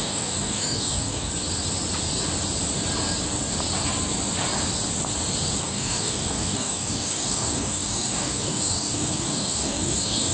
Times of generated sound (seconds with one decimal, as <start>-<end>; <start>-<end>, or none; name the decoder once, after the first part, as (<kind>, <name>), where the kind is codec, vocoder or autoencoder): 0.0-1.3 (codec, DAC); 5.6-10.3